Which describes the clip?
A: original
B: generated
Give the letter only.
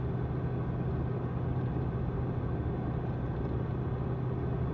A